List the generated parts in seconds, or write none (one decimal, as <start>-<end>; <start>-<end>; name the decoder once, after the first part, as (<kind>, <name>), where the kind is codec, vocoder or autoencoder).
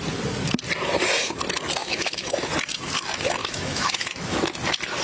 1.8-2.5 (autoencoder, DAC-VAE); 3.4-4.4